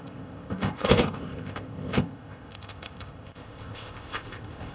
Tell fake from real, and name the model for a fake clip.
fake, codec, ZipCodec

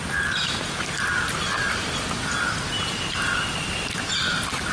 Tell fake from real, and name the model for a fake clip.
real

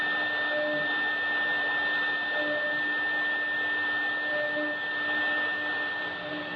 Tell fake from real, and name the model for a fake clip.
real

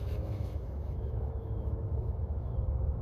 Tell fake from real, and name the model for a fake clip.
fake, autoencoder, DAC-VAE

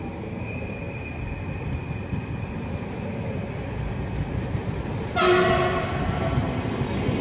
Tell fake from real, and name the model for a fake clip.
real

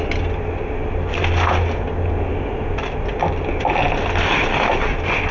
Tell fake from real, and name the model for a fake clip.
real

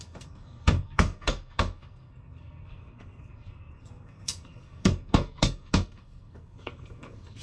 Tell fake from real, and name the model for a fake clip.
fake, codec, SNAC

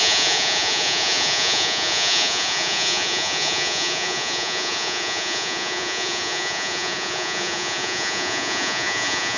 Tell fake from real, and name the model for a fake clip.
fake, vocoder, Vocos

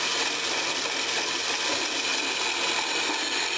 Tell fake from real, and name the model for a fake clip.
real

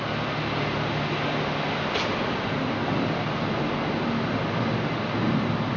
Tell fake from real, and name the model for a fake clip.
real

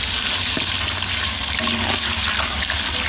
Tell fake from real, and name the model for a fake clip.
real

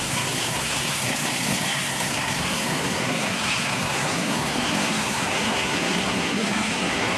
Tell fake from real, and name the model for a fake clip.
fake, codec, SNAC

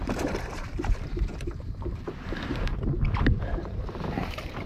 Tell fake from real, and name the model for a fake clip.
fake, vocoder, BigVGAN v2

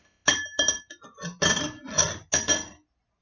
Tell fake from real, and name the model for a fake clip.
real